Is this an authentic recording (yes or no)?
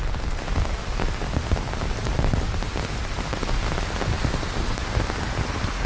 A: yes